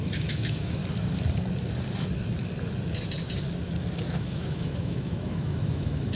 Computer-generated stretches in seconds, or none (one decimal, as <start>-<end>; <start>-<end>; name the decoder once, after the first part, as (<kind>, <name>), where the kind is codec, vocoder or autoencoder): 0.0-0.8 (autoencoder, DAC-VAE); 4.2-6.2